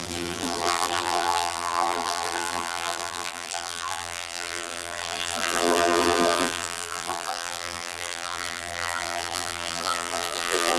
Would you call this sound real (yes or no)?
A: no